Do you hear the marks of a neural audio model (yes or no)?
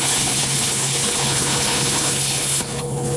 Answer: yes